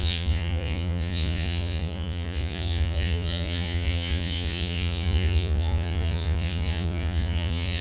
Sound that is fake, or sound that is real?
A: fake